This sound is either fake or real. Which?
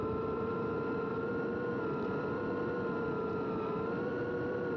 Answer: fake